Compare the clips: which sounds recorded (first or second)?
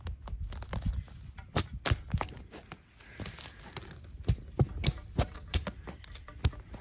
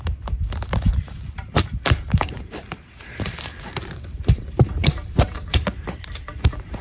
first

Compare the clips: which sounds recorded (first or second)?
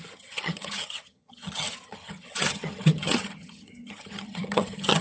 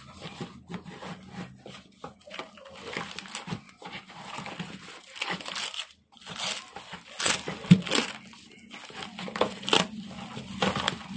second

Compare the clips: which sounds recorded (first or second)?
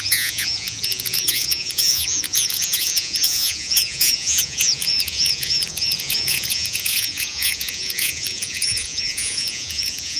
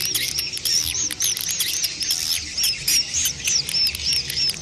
second